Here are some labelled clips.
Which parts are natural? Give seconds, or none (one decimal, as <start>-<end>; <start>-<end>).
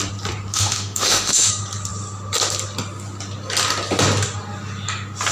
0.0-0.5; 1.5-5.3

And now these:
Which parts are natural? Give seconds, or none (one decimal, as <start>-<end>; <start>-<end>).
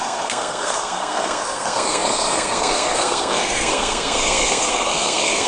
none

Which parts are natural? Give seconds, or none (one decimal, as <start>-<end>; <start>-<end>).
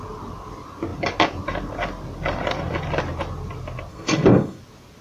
0.0-3.9; 4.6-5.0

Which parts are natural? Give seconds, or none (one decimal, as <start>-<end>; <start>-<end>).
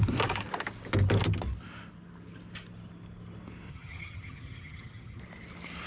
0.0-3.7; 5.2-5.9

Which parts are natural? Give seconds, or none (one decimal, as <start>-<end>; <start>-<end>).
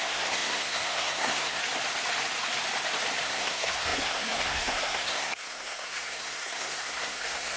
1.6-3.2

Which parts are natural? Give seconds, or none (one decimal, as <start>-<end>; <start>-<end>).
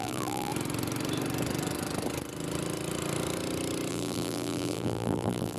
0.5-3.9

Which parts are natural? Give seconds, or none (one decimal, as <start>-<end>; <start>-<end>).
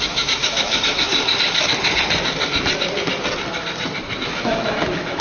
1.1-4.2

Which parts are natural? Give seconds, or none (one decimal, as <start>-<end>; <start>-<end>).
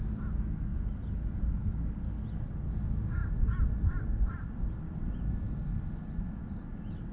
0.0-0.7; 2.7-3.2; 5.9-7.1